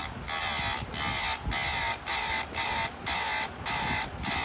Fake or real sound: real